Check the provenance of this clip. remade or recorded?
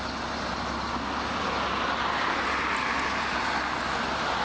recorded